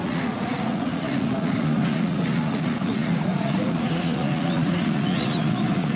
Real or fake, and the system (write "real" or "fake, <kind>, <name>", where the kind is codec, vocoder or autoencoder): fake, vocoder, Vocos